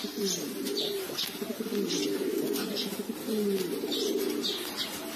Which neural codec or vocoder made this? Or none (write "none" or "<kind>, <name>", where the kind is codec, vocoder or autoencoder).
none